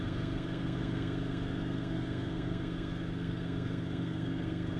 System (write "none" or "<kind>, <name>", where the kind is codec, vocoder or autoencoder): codec, SNAC